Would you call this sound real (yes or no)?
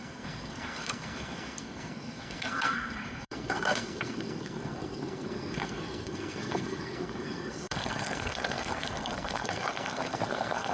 no